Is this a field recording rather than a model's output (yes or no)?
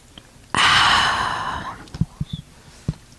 yes